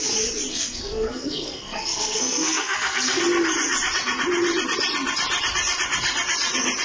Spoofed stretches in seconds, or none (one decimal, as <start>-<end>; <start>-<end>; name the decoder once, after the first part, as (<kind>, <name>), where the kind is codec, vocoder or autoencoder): 0.5-3.2 (codec, SNAC)